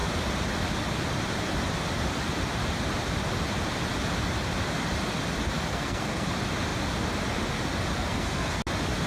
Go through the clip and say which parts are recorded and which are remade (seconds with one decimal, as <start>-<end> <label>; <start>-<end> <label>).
0.0-5.7 recorded; 5.7-6.3 remade; 6.3-7.9 recorded; 7.9-8.6 remade; 8.6-9.1 recorded